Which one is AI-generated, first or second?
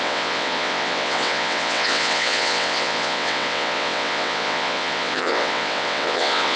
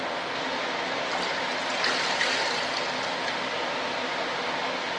first